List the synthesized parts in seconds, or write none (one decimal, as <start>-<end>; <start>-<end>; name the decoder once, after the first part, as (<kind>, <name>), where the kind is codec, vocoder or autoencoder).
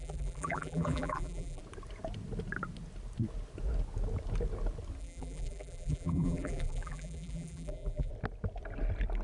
0.0-1.6 (vocoder, BigVGAN v2); 5.0-8.1